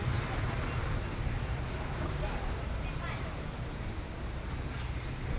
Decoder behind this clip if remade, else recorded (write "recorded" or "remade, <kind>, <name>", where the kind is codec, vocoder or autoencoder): recorded